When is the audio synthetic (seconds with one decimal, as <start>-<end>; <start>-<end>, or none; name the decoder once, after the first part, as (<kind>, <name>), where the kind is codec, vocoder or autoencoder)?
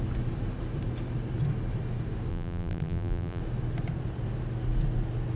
2.3-3.4 (vocoder, BigVGAN v2)